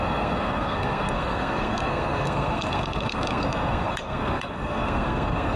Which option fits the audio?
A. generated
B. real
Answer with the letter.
A